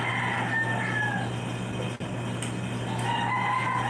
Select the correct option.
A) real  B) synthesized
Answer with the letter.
A